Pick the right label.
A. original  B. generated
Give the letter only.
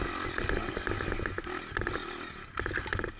A